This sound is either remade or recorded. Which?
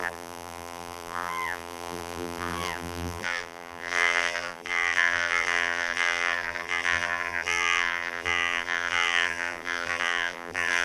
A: remade